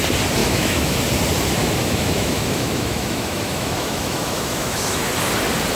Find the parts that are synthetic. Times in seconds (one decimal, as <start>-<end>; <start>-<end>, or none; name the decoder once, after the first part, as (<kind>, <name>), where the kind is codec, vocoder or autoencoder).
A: 0.4-1.0 (autoencoder, DAC-VAE); 1.6-5.1